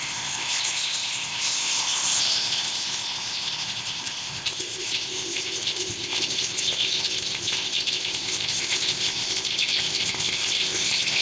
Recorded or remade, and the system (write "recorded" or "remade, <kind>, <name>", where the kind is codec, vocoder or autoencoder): remade, codec, ZipCodec